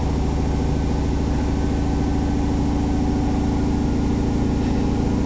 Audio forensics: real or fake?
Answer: real